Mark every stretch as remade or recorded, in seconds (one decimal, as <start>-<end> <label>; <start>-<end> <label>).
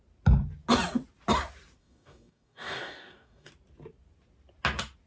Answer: 0.0-1.8 recorded; 1.8-3.5 remade; 3.5-5.1 recorded